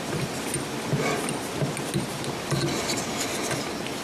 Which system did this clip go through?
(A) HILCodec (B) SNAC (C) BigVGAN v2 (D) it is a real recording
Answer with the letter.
D